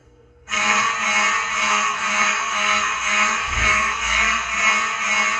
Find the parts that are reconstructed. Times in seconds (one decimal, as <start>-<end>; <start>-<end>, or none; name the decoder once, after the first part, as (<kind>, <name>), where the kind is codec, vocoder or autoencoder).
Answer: 0.0-0.9 (codec, SNAC); 1.5-4.7